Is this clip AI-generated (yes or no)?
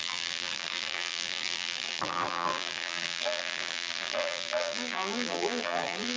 yes